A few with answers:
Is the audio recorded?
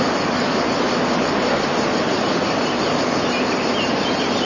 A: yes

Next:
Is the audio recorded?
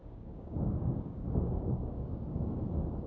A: no